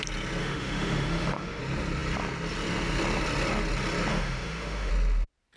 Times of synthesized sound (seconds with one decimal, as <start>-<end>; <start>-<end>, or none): 0.4-1.6; 4.1-4.9